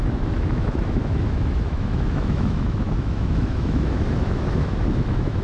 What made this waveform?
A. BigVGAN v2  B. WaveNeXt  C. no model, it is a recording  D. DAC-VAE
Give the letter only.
D